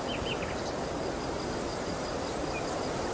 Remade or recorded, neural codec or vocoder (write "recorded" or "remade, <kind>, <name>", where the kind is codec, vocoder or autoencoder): recorded